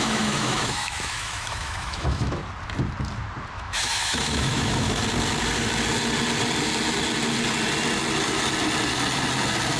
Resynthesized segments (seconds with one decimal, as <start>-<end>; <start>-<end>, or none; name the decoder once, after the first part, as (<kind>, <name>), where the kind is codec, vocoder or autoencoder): 0.0-2.4 (autoencoder, DAC-VAE); 3.5-5.0